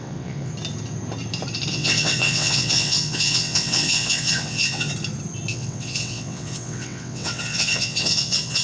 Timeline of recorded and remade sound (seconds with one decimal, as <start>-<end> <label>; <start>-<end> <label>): 0.0-0.5 remade; 0.5-1.7 recorded; 1.7-4.9 remade; 4.9-5.5 recorded; 5.5-8.6 remade